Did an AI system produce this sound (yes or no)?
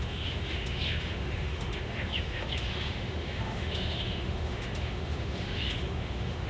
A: yes